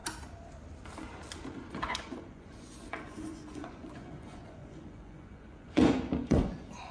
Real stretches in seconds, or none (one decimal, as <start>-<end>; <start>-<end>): 0.0-1.7